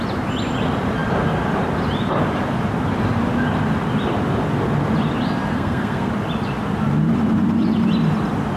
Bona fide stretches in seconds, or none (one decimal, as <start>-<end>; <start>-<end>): 0.0-5.5; 6.1-8.6